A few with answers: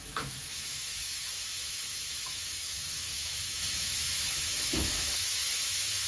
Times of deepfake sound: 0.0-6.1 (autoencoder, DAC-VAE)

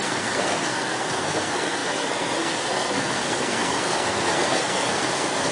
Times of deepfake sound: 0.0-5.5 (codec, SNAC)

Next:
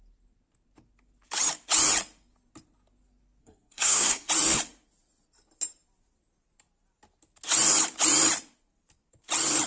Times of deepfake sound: 3.4-4.3 (codec, SNAC)

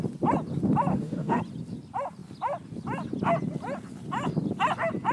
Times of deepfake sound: 0.9-1.4 (autoencoder, DAC-VAE)

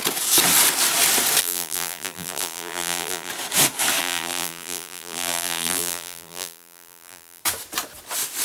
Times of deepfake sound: 1.4-3.3 (vocoder, BigVGAN v2); 4.0-7.4

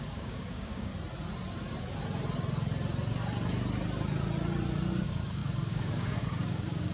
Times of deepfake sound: 0.0-0.9 (codec, DAC); 5.0-6.9

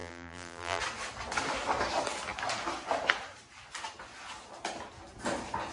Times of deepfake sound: 0.0-0.8 (vocoder, BigVGAN v2)

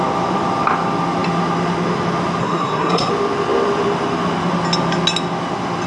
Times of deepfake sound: 2.4-3.1 (codec, SNAC)